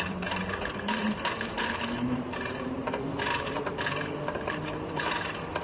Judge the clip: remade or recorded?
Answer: remade